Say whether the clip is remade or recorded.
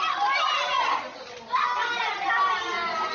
recorded